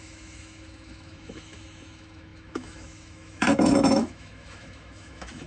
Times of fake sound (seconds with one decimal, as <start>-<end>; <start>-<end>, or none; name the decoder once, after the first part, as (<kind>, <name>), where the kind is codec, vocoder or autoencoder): 0.0-5.5 (autoencoder, DAC-VAE)